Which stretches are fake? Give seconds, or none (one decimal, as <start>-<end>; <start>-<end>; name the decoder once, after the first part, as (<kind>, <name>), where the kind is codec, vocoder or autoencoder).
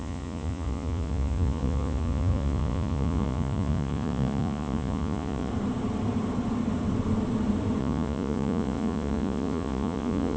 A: 0.0-5.5 (vocoder, Vocos); 7.8-10.4